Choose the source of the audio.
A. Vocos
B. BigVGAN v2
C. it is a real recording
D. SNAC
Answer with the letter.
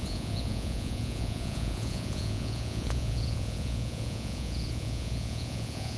A